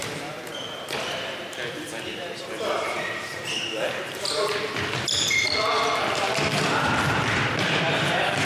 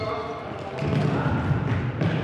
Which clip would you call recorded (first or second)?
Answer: second